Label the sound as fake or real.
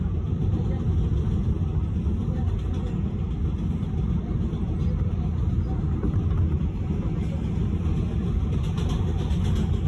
real